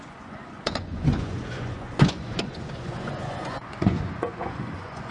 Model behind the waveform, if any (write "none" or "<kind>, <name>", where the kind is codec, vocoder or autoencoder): vocoder, Vocos